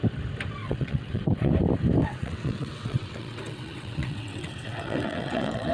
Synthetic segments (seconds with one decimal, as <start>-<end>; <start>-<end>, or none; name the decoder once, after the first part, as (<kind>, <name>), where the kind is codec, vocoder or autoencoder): 0.6-1.5 (vocoder, WaveNeXt); 2.0-5.7

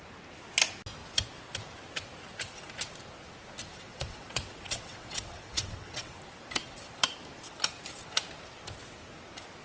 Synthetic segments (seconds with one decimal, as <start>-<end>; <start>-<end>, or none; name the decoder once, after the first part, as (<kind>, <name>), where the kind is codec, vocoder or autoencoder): 3.9-6.2 (vocoder, WaveNeXt)

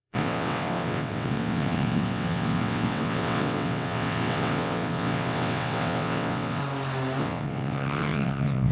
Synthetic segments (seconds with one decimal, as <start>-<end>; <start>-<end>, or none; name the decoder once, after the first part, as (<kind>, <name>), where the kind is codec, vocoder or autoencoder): 0.0-6.6 (vocoder, WaveNeXt); 7.2-8.7

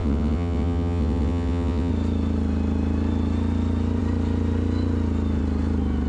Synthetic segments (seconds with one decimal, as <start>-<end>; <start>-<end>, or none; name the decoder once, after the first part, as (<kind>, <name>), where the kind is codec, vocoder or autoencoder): 0.0-1.9 (vocoder, WaveNeXt)

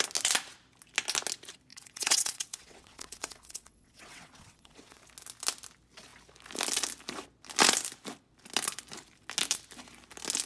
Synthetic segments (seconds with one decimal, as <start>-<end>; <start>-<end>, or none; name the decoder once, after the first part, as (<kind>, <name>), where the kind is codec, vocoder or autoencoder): 1.7-5.0 (vocoder, WaveNeXt)

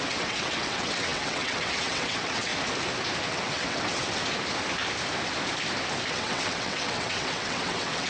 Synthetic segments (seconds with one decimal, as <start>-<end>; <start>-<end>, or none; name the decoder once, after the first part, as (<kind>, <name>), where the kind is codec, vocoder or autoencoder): 0.0-2.5 (vocoder, WaveNeXt); 3.3-4.2; 6.1-8.1